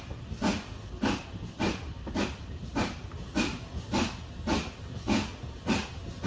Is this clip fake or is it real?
real